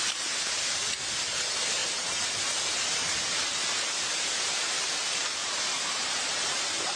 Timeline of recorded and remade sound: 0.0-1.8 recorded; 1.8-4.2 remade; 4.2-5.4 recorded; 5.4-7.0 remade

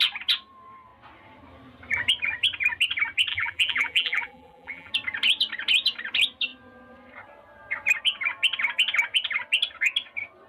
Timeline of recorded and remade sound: 0.0-3.3 recorded; 3.3-4.9 remade; 4.9-10.5 recorded

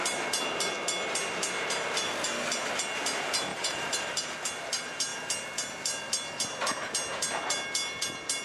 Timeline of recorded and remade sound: 0.0-3.5 recorded; 3.5-4.1 remade; 4.1-8.4 recorded

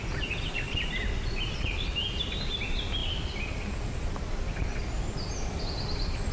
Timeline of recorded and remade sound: 0.0-6.3 recorded

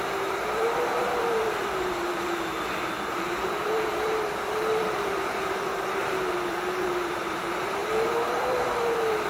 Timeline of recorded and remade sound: 0.0-9.3 remade

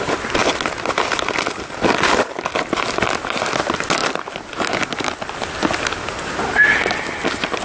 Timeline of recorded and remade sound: 0.0-7.6 recorded